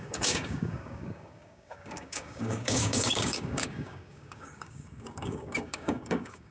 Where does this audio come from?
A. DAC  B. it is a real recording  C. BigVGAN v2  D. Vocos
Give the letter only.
A